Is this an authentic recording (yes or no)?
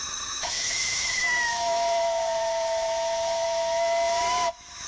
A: no